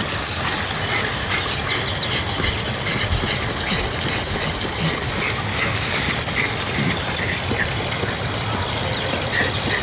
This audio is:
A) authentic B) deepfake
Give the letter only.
A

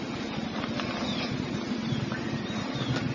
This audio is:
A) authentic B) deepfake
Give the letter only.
A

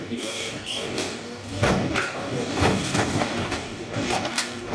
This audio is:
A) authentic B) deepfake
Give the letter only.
B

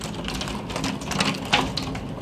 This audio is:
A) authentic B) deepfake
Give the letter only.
A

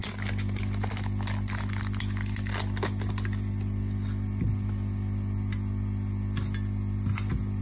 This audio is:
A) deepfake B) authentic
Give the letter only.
B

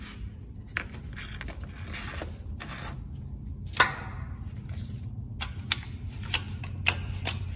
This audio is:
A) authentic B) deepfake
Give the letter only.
A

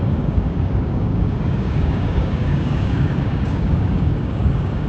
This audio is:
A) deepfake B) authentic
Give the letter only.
A